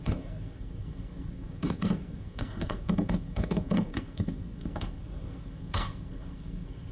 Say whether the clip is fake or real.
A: fake